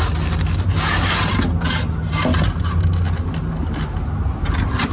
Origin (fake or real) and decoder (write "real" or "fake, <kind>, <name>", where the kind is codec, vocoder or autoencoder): real